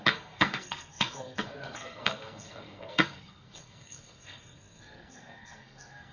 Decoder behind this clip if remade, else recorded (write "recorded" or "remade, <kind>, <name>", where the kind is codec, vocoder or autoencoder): remade, codec, SNAC